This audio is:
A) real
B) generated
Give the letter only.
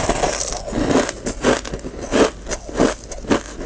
A